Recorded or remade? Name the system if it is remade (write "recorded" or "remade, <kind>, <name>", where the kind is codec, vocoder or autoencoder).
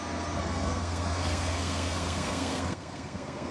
remade, codec, SNAC